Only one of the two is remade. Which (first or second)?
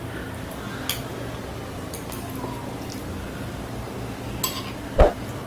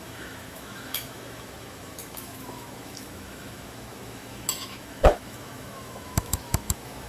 second